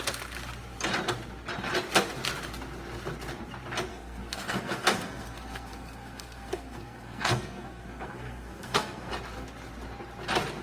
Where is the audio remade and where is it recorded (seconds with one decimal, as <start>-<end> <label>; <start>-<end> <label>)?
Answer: 0.0-3.9 recorded; 3.9-9.1 remade; 9.1-10.6 recorded